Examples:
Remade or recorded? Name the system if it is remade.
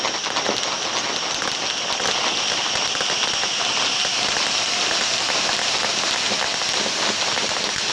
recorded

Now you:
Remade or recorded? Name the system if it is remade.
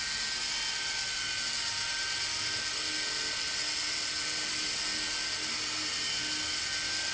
recorded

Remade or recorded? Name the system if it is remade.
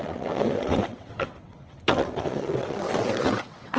remade, vocoder, WaveNeXt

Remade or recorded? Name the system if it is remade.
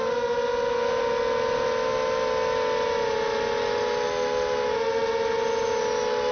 recorded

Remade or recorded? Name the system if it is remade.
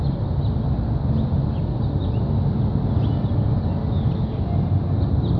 recorded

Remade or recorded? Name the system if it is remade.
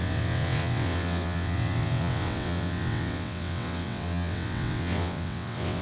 remade, vocoder, WaveNeXt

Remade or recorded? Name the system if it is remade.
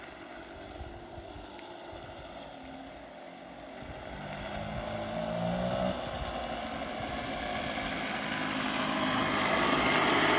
recorded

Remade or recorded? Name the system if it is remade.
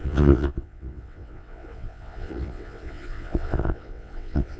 remade, vocoder, WaveNeXt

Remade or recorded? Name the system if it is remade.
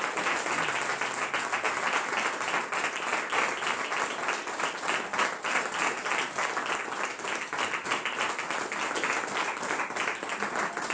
recorded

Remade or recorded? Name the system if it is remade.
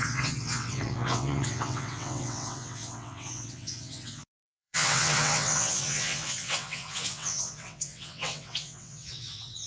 remade, vocoder, WaveNeXt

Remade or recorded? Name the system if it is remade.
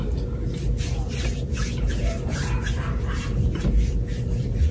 recorded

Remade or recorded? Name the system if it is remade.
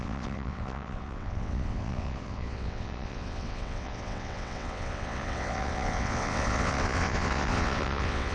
remade, vocoder, WaveNeXt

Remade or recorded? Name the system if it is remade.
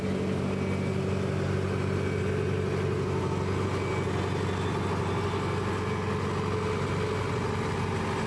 recorded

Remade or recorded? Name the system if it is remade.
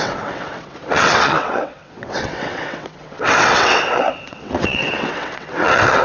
remade, vocoder, WaveNeXt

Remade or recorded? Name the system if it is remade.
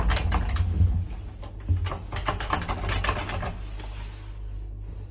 recorded